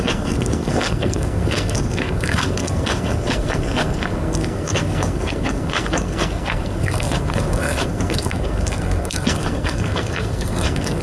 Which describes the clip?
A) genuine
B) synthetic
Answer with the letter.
B